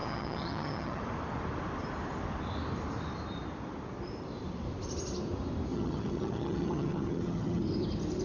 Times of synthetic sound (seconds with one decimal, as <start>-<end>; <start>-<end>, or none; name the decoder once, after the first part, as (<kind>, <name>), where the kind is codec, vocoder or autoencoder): 0.0-1.0 (vocoder, HiFi-GAN); 5.7-7.6